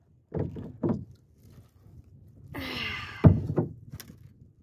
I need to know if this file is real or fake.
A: real